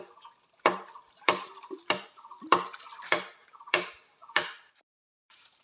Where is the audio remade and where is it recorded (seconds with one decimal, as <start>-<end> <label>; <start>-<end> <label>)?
0.0-5.6 remade